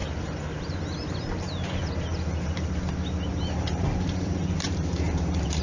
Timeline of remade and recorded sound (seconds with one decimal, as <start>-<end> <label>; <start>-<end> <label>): 0.0-2.1 recorded; 2.1-2.7 remade; 2.7-3.3 recorded; 3.3-5.6 remade